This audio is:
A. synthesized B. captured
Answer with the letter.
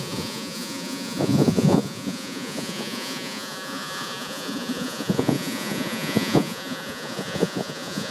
A